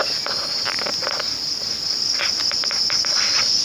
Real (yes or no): yes